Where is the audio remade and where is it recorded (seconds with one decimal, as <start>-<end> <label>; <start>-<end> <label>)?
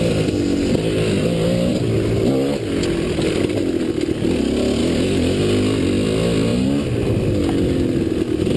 0.0-4.8 recorded; 4.8-5.4 remade; 5.4-8.6 recorded